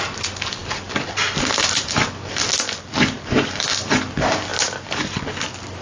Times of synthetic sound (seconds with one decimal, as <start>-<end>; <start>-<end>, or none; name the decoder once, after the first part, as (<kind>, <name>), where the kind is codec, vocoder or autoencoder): 0.6-4.1 (vocoder, BigVGAN v2); 4.5-5.8